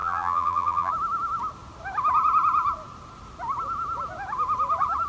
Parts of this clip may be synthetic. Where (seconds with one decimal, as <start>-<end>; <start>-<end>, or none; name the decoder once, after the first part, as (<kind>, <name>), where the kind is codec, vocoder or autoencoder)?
0.0-0.9 (vocoder, BigVGAN v2)